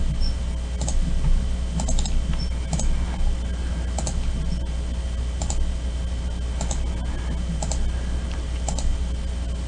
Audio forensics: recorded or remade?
recorded